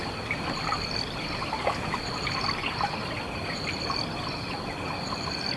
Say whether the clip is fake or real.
real